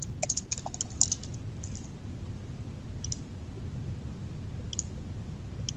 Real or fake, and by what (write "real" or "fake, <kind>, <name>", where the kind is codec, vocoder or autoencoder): real